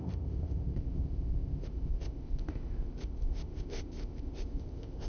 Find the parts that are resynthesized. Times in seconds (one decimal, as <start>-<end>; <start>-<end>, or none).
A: 0.0-5.1